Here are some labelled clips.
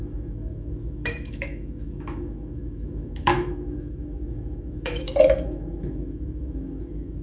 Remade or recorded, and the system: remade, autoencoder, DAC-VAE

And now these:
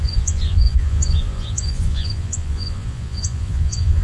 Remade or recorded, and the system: remade, vocoder, Vocos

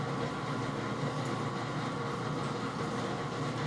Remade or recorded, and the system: recorded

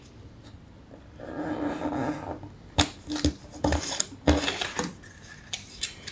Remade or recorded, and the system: recorded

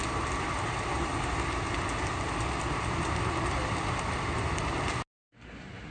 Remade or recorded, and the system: recorded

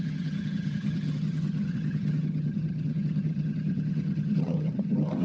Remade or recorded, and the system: remade, vocoder, HiFi-GAN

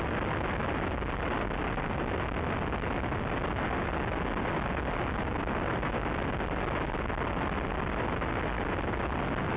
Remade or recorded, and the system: recorded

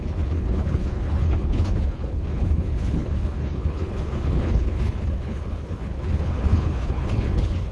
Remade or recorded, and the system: remade, codec, HILCodec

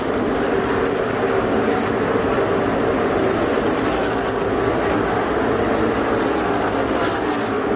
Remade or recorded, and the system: recorded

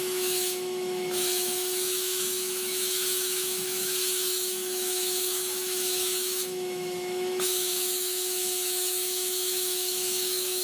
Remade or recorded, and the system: remade, autoencoder, DAC-VAE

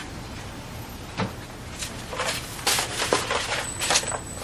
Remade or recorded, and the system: recorded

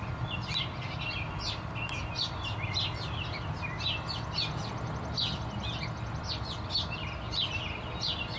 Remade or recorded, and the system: recorded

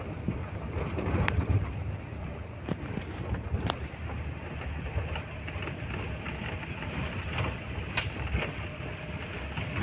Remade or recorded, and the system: recorded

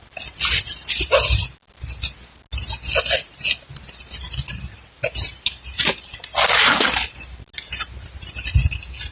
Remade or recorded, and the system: recorded